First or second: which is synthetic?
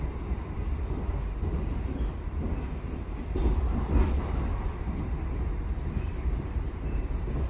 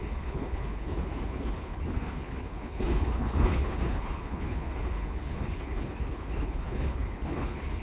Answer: second